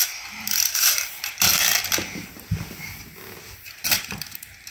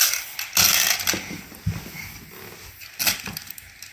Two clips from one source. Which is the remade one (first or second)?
first